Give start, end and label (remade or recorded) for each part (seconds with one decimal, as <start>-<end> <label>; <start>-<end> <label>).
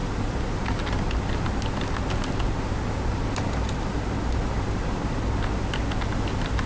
0.0-6.7 recorded